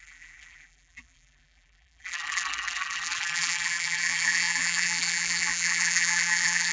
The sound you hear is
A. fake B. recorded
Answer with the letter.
A